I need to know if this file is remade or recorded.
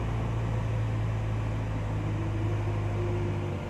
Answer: recorded